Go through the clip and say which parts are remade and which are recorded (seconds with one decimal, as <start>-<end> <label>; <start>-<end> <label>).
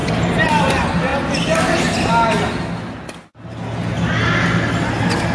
0.0-5.3 recorded